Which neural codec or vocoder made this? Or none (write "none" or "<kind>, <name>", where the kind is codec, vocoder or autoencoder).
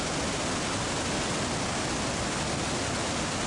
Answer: none